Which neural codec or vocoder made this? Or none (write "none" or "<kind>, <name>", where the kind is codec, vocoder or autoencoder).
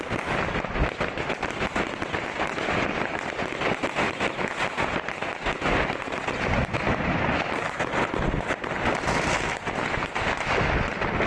none